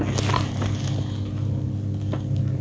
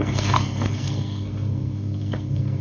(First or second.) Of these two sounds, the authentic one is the first